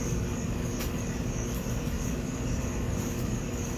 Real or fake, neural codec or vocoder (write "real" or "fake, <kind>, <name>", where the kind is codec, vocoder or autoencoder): fake, codec, DAC